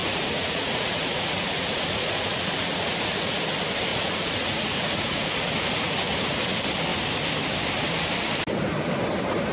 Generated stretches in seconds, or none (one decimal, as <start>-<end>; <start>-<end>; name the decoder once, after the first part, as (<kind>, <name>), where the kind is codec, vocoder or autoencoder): 0.0-3.4 (vocoder, Vocos); 3.9-6.0